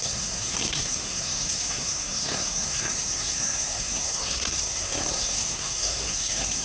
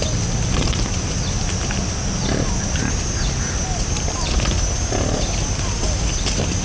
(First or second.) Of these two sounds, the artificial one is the first